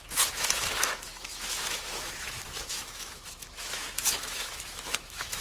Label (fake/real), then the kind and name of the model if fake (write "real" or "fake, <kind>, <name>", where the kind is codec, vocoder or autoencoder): fake, autoencoder, DAC-VAE